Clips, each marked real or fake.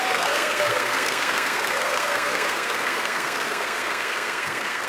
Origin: fake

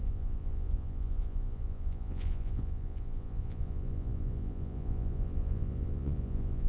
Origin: fake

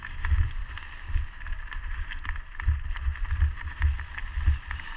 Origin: real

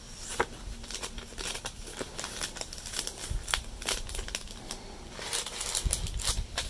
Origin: real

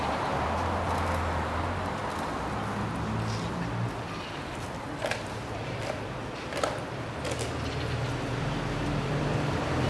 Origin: real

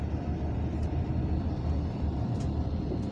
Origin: real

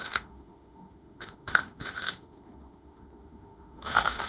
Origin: fake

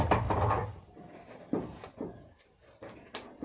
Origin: real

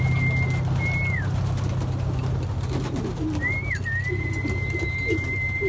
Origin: real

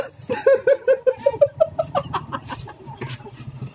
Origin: real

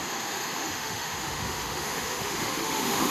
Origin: fake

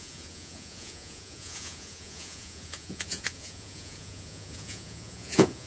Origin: fake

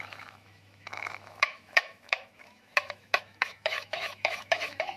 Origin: fake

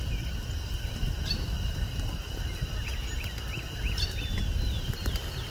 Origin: fake